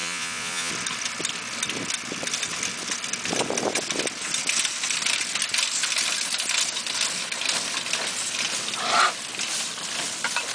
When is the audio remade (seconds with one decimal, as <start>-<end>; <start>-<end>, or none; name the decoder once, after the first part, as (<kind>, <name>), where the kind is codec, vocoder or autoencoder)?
0.0-0.7 (vocoder, Vocos)